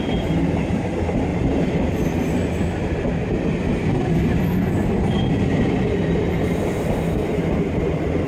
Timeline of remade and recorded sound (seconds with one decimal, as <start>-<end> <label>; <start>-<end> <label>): 0.0-1.3 recorded; 1.3-1.9 remade; 1.9-5.5 recorded; 5.5-7.2 remade; 7.2-8.3 recorded